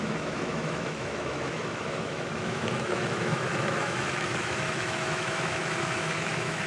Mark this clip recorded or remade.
remade